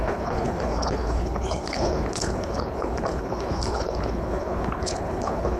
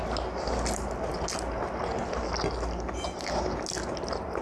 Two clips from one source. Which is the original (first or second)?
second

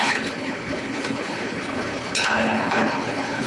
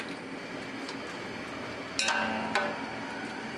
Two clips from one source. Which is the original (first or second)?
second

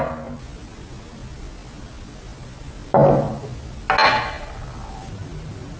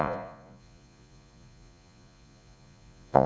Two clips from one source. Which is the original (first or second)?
first